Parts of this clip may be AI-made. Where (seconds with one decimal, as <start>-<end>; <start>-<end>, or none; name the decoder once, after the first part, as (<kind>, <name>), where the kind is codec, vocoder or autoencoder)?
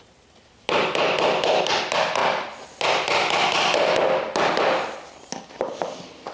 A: none